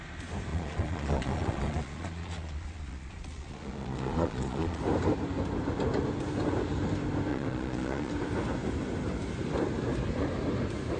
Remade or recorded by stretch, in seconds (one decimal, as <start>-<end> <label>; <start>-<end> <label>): 0.0-0.5 recorded; 0.5-4.8 remade; 4.8-7.3 recorded; 7.3-8.1 remade; 8.1-11.0 recorded